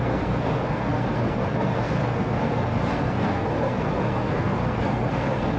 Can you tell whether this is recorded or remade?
remade